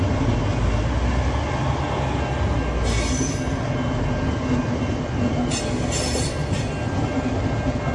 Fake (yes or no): no